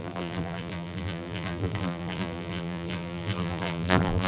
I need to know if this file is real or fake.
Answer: fake